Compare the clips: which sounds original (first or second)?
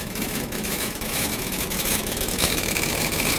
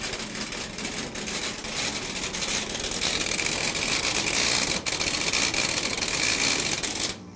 second